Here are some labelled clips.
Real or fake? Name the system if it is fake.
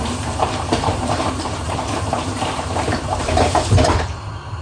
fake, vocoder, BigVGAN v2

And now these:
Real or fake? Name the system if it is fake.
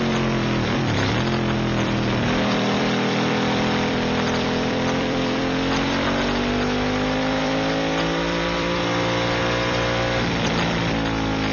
fake, vocoder, BigVGAN v2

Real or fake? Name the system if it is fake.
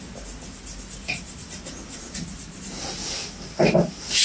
real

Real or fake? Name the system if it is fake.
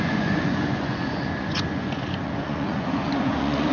fake, vocoder, Vocos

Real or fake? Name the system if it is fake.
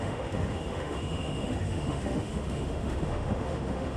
fake, autoencoder, DAC-VAE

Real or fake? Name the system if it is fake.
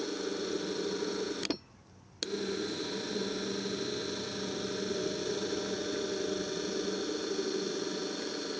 real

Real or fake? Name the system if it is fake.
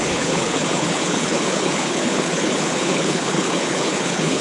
fake, codec, HILCodec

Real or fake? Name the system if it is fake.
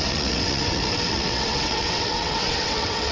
fake, vocoder, WaveNeXt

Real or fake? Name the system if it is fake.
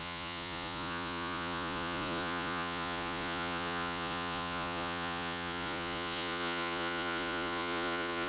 fake, vocoder, Vocos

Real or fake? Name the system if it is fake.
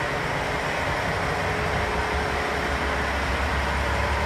real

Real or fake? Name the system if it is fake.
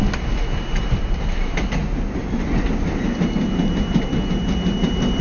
real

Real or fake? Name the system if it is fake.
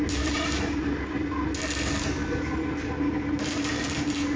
real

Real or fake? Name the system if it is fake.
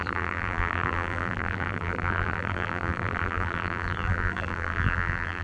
fake, vocoder, BigVGAN v2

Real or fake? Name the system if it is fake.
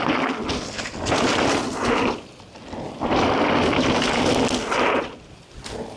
real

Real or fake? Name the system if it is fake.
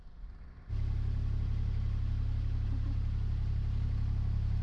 real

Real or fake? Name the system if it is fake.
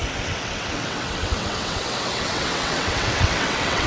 fake, vocoder, WaveNeXt